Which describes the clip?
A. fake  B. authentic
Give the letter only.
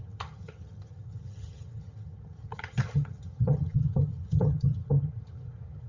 A